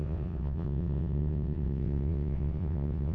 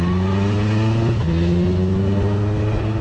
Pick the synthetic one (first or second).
first